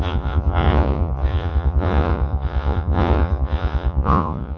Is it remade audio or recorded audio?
remade